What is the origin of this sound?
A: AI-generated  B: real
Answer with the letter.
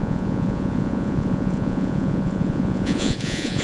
A